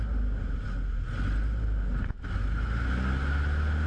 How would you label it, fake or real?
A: real